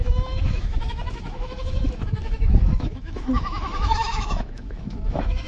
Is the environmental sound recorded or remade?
remade